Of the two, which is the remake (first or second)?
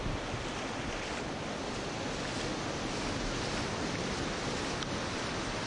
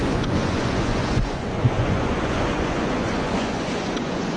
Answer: second